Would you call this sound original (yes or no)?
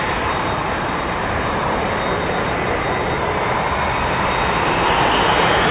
yes